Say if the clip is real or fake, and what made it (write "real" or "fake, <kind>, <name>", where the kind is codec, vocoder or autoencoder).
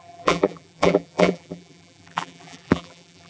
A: fake, vocoder, BigVGAN v2